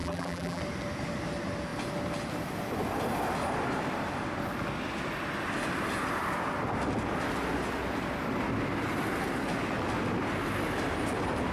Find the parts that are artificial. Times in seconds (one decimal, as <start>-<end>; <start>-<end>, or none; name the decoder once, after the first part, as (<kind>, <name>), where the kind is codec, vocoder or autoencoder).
0.0-0.6 (vocoder, BigVGAN v2)